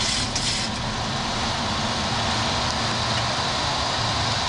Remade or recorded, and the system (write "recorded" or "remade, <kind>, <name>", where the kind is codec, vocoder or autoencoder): recorded